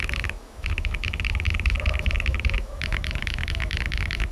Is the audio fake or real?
fake